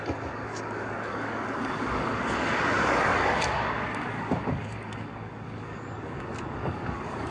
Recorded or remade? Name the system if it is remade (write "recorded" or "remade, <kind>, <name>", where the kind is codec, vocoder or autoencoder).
remade, codec, DAC